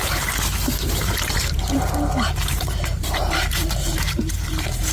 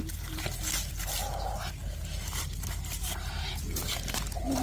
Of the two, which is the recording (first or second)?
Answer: second